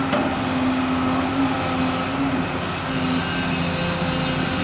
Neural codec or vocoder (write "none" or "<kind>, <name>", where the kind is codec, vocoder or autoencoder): none